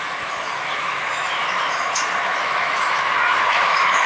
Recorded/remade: remade